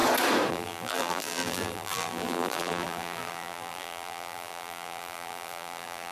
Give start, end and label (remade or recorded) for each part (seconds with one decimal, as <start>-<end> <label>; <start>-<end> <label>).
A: 0.0-0.5 recorded; 0.5-6.1 remade